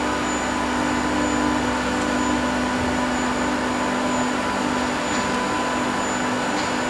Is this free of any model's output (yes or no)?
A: yes